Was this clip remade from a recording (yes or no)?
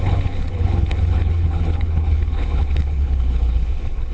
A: yes